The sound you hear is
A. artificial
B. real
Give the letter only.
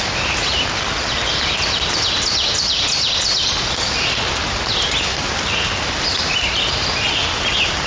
B